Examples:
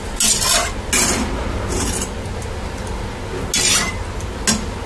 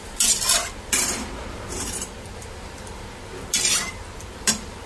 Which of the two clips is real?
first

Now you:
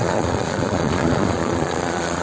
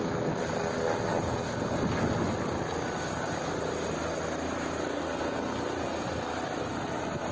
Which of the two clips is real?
second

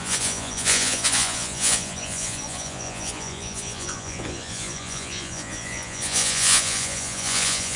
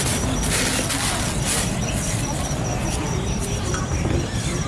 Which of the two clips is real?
second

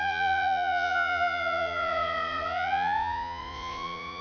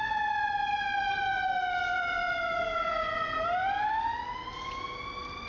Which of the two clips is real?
second